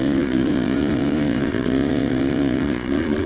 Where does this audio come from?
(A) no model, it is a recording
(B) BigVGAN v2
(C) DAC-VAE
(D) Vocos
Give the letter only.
D